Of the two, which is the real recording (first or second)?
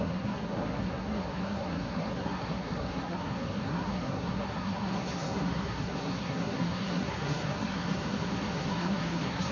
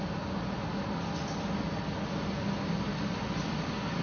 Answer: second